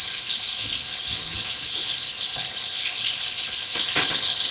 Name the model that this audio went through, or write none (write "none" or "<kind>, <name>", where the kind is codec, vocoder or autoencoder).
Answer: codec, HILCodec